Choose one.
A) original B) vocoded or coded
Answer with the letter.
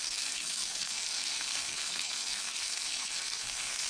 B